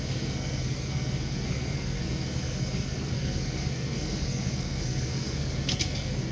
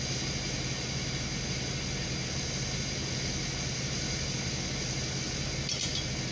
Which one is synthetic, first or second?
first